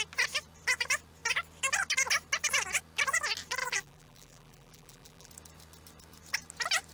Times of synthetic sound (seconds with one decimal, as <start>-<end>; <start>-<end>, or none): 3.6-5.3